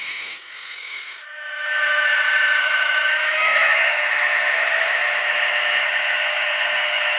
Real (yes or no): no